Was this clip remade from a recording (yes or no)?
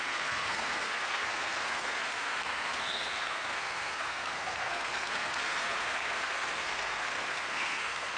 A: yes